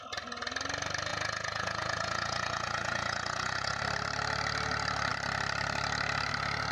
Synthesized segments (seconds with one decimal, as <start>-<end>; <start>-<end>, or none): 1.1-3.8